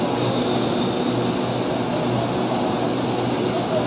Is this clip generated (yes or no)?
no